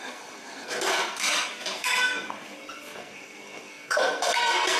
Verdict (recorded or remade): remade